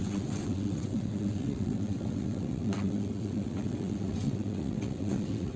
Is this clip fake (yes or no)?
yes